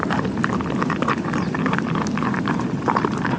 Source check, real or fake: real